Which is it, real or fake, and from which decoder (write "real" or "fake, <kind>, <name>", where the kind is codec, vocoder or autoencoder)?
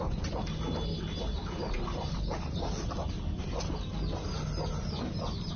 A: real